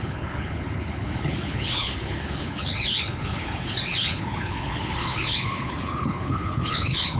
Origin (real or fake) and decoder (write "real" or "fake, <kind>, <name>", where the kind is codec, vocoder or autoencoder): fake, codec, HILCodec